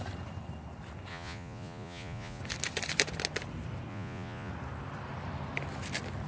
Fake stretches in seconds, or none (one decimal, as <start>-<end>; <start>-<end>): 1.1-2.4; 3.9-4.5